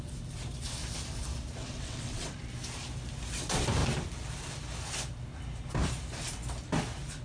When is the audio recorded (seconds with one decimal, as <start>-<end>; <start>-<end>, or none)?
0.0-1.6; 2.4-7.2